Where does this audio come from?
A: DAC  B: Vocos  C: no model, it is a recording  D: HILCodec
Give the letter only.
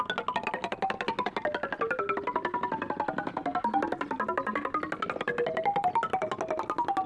C